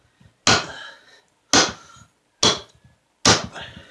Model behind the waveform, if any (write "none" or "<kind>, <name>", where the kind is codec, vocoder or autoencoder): none